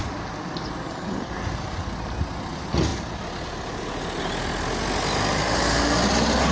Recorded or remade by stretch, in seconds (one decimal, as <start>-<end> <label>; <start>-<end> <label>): 0.0-6.5 recorded